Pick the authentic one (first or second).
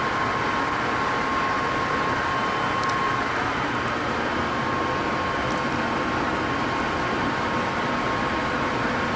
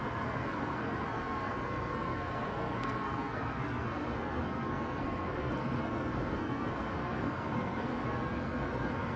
first